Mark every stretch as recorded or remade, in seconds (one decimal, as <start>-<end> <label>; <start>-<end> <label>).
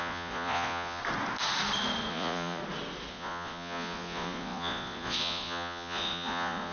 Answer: 0.0-1.0 remade; 1.0-2.1 recorded; 2.1-2.6 remade; 2.6-3.1 recorded; 3.1-6.7 remade